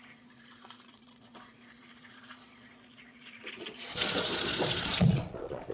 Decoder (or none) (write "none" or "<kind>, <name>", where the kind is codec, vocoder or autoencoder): vocoder, Vocos